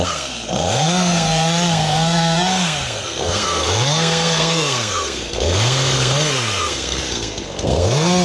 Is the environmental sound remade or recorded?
remade